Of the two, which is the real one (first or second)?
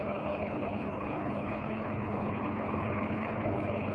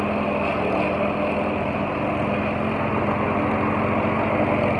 second